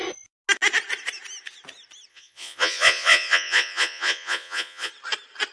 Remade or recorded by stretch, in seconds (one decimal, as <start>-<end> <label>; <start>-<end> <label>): 0.0-2.1 recorded; 2.1-4.9 remade; 4.9-5.5 recorded